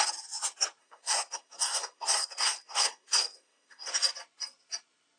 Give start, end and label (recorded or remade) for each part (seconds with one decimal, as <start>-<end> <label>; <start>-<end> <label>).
0.0-0.8 recorded; 0.8-3.9 remade; 3.9-5.2 recorded